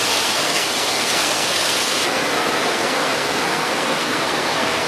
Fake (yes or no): yes